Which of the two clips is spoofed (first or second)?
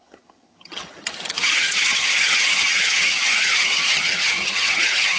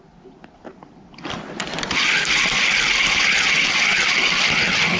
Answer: first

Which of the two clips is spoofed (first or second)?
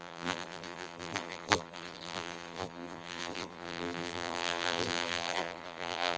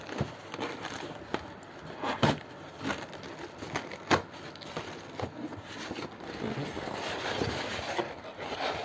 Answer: first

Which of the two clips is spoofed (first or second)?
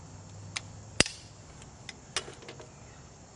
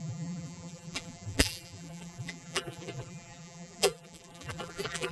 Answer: second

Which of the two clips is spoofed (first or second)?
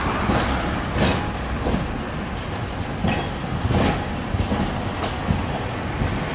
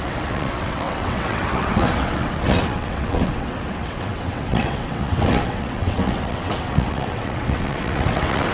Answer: second